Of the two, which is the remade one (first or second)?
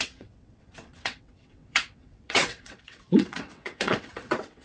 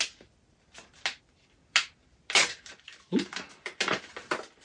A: first